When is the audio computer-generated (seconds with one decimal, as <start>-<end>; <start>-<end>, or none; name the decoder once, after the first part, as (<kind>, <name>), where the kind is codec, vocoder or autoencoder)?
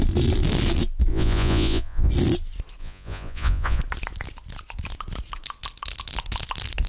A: 1.1-2.1 (vocoder, Vocos); 2.8-3.8